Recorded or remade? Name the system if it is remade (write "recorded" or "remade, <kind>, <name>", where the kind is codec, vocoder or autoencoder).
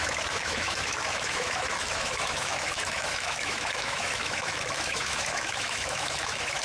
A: remade, autoencoder, DAC-VAE